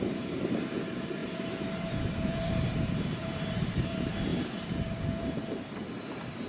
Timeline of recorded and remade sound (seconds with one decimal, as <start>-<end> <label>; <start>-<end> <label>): 0.0-6.5 remade

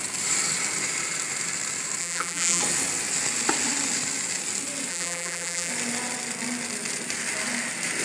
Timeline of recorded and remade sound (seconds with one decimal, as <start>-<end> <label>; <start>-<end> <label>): 0.0-2.0 recorded; 2.0-2.6 remade; 2.6-4.9 recorded; 4.9-5.7 remade; 5.7-8.0 recorded

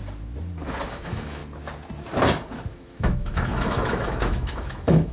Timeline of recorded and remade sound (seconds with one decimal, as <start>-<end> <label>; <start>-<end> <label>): 0.0-0.9 recorded; 0.9-1.4 remade; 1.4-2.7 recorded; 2.7-5.1 remade

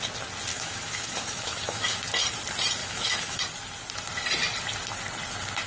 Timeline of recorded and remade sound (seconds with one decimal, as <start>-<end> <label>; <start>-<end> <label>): 0.0-0.5 recorded; 0.5-2.0 remade; 2.0-2.8 recorded; 2.8-3.4 remade; 3.4-5.7 recorded

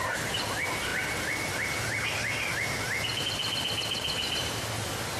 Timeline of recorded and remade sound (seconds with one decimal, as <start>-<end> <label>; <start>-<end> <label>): 0.0-5.2 recorded